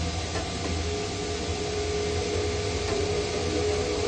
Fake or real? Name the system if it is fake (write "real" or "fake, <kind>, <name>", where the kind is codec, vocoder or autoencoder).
real